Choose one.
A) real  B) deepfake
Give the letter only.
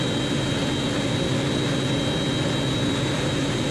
A